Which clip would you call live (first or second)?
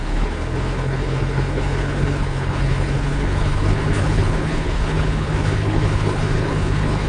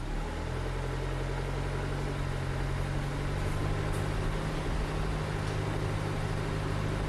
second